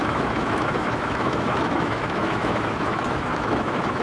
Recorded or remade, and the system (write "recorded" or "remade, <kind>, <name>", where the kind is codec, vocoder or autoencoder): remade, autoencoder, DAC-VAE